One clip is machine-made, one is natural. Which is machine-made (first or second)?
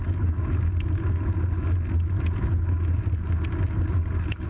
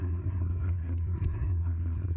second